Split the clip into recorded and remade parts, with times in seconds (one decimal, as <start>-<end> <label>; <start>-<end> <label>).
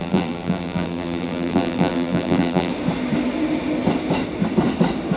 0.0-2.7 remade; 2.7-5.2 recorded